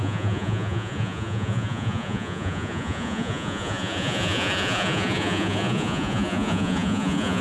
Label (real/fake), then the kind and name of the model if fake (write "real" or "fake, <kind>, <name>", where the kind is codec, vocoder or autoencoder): fake, vocoder, Vocos